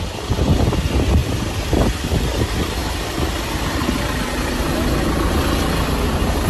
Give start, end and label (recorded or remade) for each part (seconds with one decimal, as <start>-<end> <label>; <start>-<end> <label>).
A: 0.0-6.5 recorded